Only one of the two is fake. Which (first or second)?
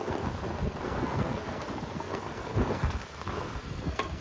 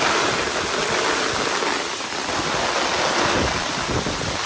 first